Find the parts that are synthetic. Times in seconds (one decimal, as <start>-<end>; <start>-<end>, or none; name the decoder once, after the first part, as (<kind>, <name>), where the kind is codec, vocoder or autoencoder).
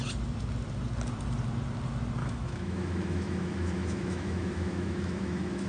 2.2-5.7 (autoencoder, DAC-VAE)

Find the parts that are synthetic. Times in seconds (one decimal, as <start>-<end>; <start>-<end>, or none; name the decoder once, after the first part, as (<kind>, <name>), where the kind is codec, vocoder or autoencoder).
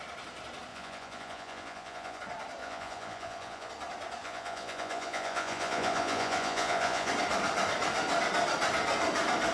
0.7-2.2 (vocoder, Vocos); 2.6-3.7; 4.2-7.1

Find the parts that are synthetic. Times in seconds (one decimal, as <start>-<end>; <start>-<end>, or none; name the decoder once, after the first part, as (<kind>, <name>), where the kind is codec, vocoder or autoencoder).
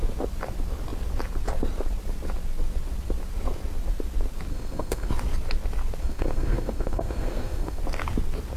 4.5-5.1 (codec, SNAC); 6.0-7.8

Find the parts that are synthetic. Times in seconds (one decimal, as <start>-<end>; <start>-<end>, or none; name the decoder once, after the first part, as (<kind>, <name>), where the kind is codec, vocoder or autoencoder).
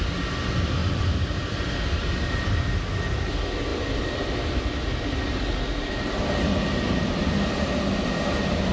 0.8-2.3 (vocoder, BigVGAN v2); 3.7-4.2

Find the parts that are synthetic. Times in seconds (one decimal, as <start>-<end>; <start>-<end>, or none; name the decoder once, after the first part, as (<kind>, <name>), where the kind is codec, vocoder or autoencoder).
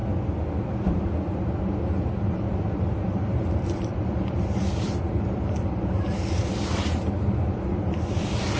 1.7-6.5 (vocoder, BigVGAN v2); 7.2-8.6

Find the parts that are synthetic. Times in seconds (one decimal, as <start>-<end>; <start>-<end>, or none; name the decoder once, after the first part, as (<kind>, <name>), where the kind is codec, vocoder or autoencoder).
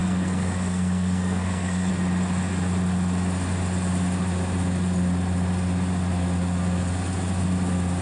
0.0-1.9 (codec, SNAC)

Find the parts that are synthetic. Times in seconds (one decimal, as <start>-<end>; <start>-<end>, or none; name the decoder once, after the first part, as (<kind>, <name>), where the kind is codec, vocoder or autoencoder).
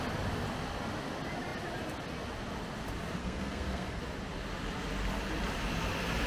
3.2-4.0 (codec, SNAC)